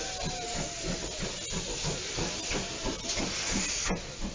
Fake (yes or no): no